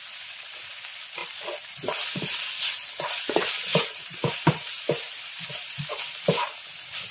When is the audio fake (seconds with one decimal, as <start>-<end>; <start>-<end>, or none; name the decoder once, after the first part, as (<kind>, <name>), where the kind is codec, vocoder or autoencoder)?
3.7-6.0 (vocoder, BigVGAN v2)